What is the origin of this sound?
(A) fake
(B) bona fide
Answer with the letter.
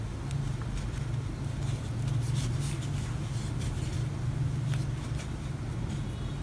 B